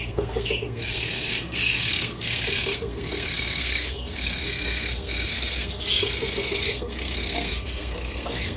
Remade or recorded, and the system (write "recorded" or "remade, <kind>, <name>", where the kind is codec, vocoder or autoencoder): remade, codec, SNAC